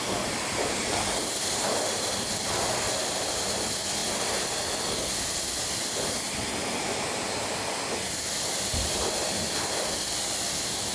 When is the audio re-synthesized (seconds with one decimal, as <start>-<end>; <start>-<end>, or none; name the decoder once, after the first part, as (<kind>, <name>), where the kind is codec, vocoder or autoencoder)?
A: none